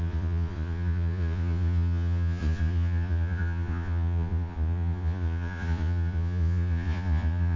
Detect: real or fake fake